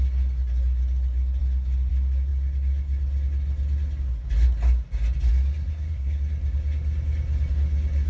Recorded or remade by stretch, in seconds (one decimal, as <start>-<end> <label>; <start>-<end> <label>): 0.0-5.7 recorded; 5.7-6.2 remade; 6.2-8.1 recorded